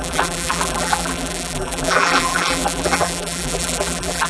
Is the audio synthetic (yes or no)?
yes